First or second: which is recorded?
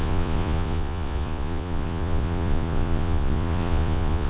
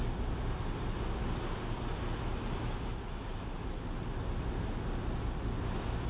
second